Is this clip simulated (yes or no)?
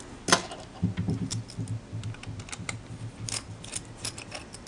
no